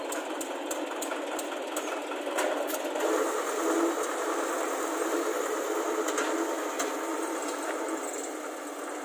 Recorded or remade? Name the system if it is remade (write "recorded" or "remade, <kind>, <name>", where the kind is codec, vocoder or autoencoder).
recorded